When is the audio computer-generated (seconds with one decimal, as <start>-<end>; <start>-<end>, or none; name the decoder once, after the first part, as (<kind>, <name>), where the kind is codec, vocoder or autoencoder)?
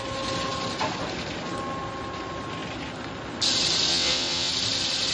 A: 3.9-4.5 (vocoder, WaveNeXt)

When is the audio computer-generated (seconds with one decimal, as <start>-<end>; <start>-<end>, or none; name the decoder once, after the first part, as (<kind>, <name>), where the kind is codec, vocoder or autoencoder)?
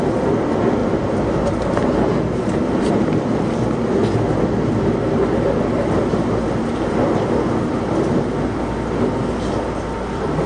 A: none